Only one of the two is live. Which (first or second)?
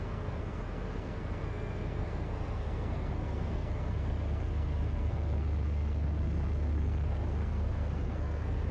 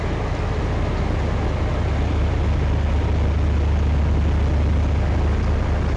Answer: second